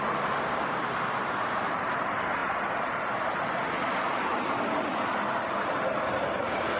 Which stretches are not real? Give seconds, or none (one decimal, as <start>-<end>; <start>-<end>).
none